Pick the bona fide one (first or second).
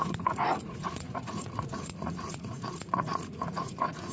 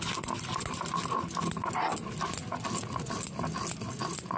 second